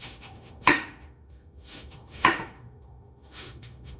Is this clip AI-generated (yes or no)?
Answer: yes